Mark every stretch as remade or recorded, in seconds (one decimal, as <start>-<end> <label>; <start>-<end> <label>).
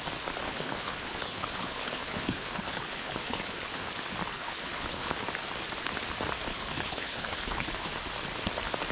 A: 0.0-0.4 recorded; 0.4-3.9 remade; 3.9-4.3 recorded; 4.3-5.1 remade; 5.1-6.5 recorded; 6.5-7.9 remade; 7.9-8.9 recorded